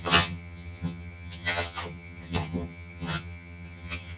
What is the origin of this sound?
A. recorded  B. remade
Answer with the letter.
B